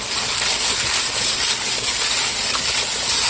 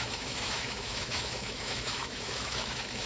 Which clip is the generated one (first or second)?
second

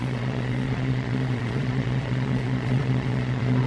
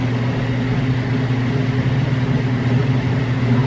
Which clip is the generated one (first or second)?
first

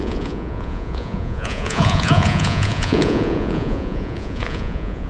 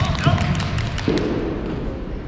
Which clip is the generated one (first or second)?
first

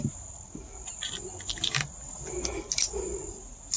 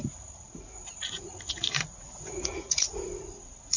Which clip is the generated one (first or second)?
second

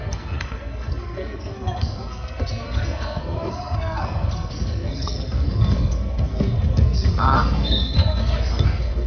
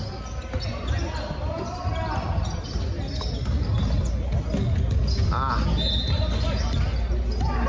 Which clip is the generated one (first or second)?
first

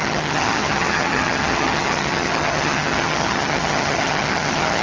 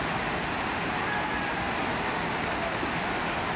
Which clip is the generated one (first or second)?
first